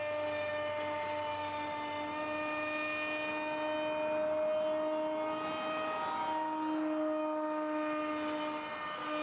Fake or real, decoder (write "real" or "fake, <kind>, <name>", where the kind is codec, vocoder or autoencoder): real